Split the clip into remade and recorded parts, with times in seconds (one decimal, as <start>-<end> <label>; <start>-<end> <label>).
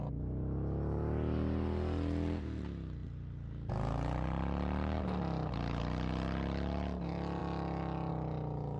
0.0-8.8 recorded